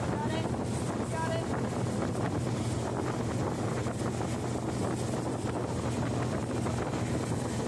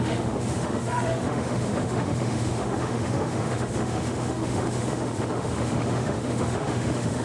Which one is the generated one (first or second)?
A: second